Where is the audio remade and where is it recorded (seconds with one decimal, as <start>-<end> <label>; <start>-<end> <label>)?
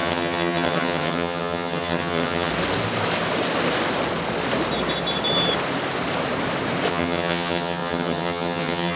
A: 0.0-2.5 remade; 2.5-6.9 recorded; 6.9-9.0 remade